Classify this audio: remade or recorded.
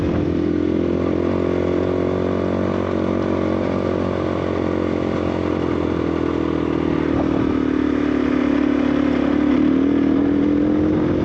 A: recorded